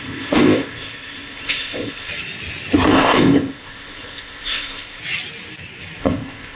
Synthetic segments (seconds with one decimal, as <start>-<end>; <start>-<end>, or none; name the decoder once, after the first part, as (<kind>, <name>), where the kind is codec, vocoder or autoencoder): 0.0-2.1 (codec, ZipCodec); 2.9-5.0; 6.0-6.5